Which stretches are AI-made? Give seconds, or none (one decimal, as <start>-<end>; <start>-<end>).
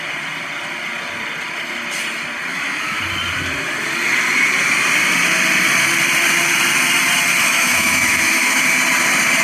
2.5-3.0; 7.4-8.6